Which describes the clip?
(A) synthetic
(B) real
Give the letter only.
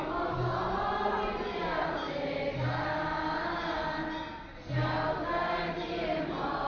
B